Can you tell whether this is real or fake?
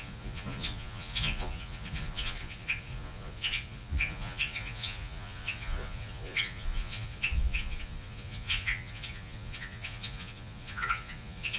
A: fake